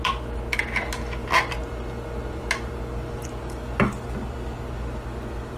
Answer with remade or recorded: recorded